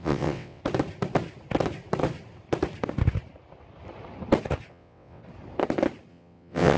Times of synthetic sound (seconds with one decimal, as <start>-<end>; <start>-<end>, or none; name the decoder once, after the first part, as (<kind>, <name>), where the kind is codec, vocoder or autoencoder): 0.0-0.6 (vocoder, WaveNeXt); 4.7-5.2; 6.1-6.8